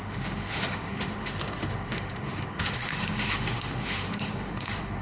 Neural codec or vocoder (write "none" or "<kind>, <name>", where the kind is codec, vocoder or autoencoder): autoencoder, DAC-VAE